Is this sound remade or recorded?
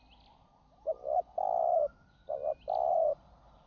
recorded